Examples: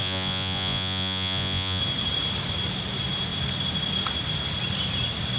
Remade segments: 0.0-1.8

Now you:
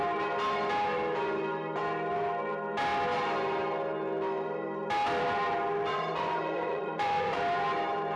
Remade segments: 5.9-7.4

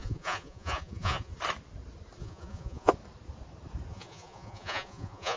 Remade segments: 0.0-1.3; 2.2-2.9; 3.9-5.4

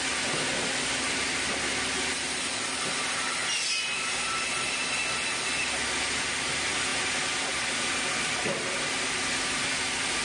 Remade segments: none

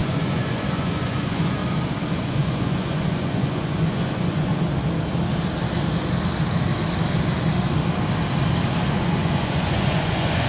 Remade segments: 0.0-1.6; 2.1-4.5; 8.9-10.5

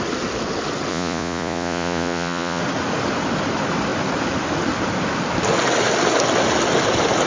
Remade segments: 0.9-2.6